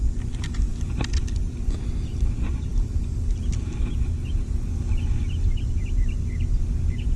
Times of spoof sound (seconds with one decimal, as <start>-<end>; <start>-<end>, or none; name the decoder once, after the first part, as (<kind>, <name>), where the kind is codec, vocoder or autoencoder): none

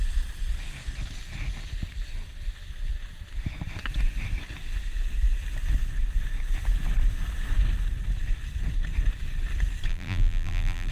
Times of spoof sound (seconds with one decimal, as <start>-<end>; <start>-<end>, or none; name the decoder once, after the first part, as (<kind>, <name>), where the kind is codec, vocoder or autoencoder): 9.9-10.9 (vocoder, BigVGAN v2)